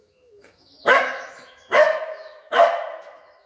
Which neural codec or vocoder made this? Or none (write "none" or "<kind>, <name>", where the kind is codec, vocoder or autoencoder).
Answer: autoencoder, DAC-VAE